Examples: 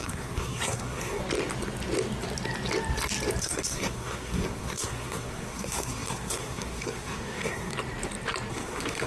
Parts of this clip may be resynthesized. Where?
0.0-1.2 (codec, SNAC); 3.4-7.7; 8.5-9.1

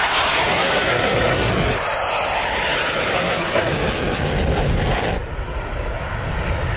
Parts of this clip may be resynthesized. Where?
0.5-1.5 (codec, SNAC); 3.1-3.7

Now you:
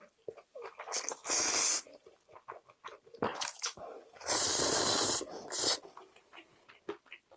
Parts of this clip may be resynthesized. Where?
3.3-3.8 (autoencoder, DAC-VAE)